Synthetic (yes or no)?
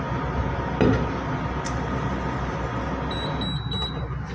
no